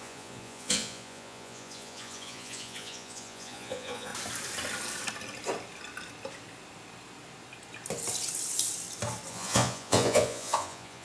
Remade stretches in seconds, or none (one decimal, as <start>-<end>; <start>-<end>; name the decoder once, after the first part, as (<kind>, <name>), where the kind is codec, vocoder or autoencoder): 0.0-4.1 (vocoder, Vocos); 9.3-11.0